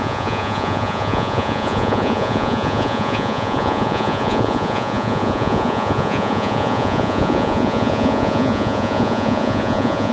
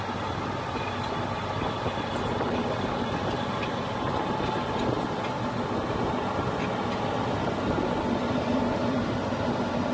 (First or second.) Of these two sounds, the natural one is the second